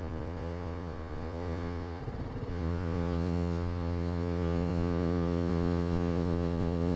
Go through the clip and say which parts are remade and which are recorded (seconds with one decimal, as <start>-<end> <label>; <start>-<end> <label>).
0.0-2.0 remade; 2.0-2.5 recorded; 2.5-7.0 remade